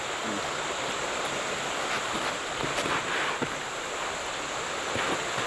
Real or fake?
real